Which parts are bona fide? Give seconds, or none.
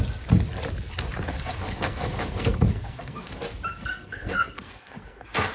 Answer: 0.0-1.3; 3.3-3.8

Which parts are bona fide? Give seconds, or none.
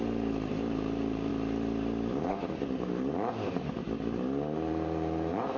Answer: 1.3-4.7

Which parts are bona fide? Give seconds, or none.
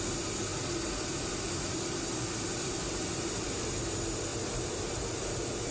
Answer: 0.0-0.5; 3.9-4.3; 5.0-5.7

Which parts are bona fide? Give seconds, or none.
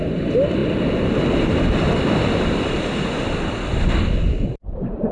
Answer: 0.0-0.6; 3.3-5.1